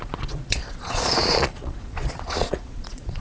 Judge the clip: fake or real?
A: fake